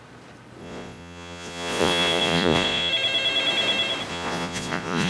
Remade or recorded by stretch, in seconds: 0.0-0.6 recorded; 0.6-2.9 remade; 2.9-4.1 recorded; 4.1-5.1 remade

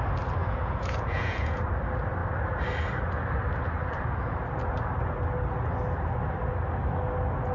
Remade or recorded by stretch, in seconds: 0.0-0.4 recorded; 0.4-1.6 remade; 1.6-7.5 recorded

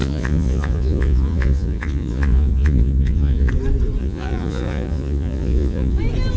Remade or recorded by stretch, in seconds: 0.0-3.5 remade; 3.5-4.0 recorded; 4.0-6.0 remade; 6.0-6.4 recorded

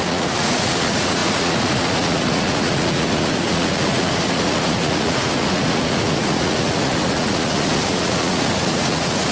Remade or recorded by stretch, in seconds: 0.0-9.3 remade

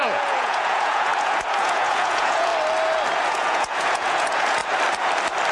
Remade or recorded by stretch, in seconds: 0.0-2.5 remade; 2.5-3.2 recorded; 3.2-4.6 remade; 4.6-5.5 recorded

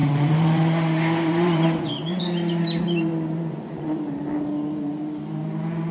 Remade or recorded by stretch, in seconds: 0.0-2.2 remade; 2.2-3.1 recorded; 3.1-4.0 remade; 4.0-5.9 recorded

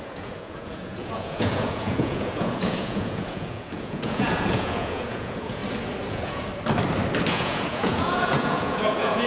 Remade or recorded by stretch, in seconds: 0.0-5.6 remade; 5.6-6.1 recorded; 6.1-6.5 remade; 6.5-7.3 recorded; 7.3-9.3 remade